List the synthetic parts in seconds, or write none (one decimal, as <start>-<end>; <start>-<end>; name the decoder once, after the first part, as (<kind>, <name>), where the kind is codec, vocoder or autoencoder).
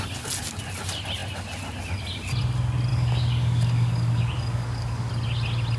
2.9-5.1 (codec, DAC)